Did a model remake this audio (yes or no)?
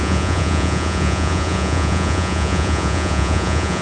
yes